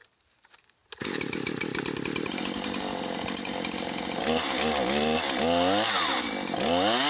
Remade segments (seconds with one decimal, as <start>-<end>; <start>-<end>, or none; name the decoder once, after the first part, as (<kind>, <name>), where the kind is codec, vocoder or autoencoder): none